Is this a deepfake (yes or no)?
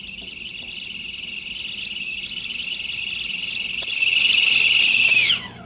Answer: no